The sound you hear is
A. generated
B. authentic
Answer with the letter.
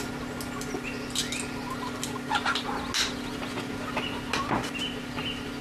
B